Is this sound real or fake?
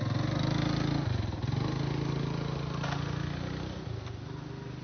real